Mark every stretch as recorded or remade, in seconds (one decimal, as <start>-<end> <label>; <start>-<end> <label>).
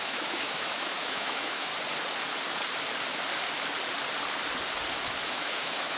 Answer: 0.0-1.7 remade; 1.7-5.3 recorded; 5.3-6.0 remade